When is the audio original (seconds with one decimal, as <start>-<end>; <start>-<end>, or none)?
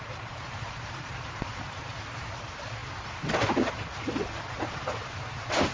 0.0-5.7